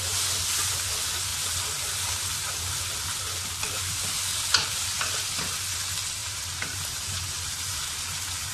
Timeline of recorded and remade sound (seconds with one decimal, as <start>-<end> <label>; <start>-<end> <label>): 0.0-1.3 recorded; 1.3-2.9 remade; 2.9-6.2 recorded; 6.2-7.8 remade; 7.8-8.5 recorded

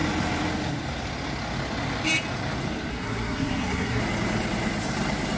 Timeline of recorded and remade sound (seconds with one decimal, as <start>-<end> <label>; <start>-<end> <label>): 0.0-2.9 recorded; 2.9-4.0 remade; 4.0-5.4 recorded

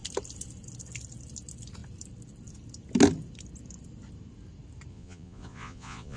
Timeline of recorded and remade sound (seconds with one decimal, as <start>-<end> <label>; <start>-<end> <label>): 0.0-4.9 recorded; 4.9-6.2 remade

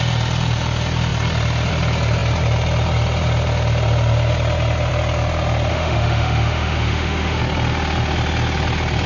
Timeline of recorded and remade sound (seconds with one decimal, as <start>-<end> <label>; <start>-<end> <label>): 0.0-5.7 recorded; 5.7-7.4 remade; 7.4-9.1 recorded

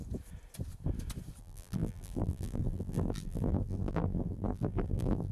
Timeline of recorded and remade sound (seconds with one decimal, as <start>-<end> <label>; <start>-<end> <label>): 0.0-1.4 recorded; 1.4-5.3 remade

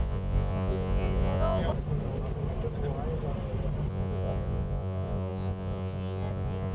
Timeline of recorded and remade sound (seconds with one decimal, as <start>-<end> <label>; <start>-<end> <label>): 0.0-1.6 remade; 1.6-3.9 recorded; 3.9-6.7 remade